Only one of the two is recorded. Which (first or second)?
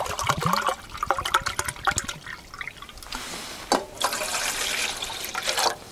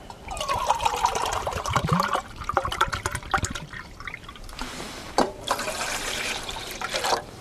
first